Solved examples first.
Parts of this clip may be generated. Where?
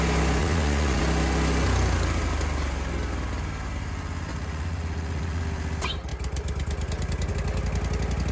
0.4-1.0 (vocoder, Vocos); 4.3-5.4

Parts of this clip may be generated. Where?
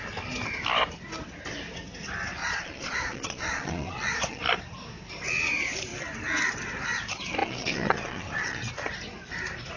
2.4-4.4 (vocoder, Vocos); 7.4-8.7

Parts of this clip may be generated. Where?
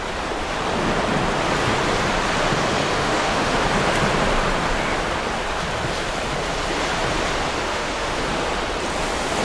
2.9-3.5 (autoencoder, DAC-VAE); 7.7-8.2